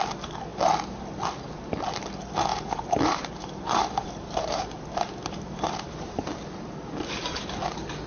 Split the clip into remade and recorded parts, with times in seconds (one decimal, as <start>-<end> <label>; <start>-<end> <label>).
0.0-2.5 recorded; 2.5-7.4 remade; 7.4-8.1 recorded